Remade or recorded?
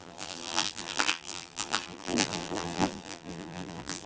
remade